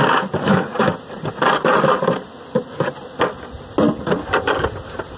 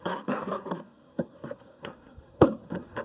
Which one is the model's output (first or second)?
second